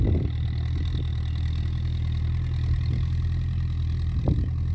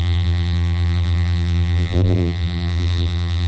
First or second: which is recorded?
first